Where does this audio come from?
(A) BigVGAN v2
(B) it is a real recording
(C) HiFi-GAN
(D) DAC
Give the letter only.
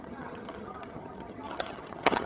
C